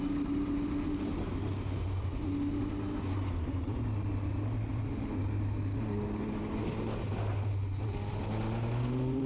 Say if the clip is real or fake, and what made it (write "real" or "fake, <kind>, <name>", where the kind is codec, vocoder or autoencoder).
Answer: real